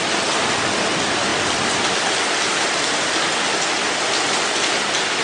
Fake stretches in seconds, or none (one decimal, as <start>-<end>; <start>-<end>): 1.3-2.7